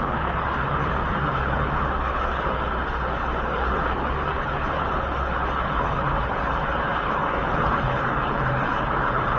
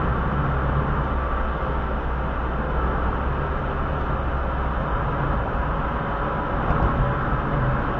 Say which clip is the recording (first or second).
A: second